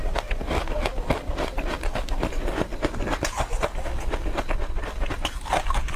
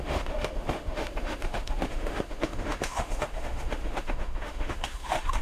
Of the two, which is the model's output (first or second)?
second